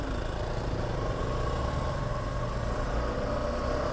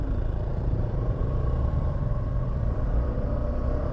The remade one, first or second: second